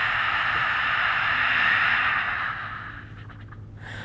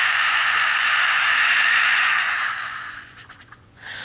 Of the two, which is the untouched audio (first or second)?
first